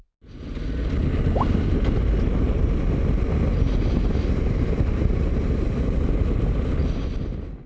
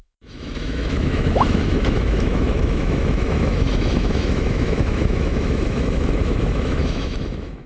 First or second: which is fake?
second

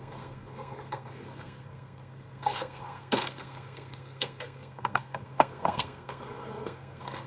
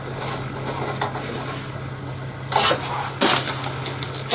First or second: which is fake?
first